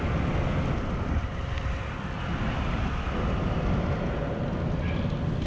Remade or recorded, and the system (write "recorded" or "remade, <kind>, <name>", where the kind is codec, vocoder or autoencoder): recorded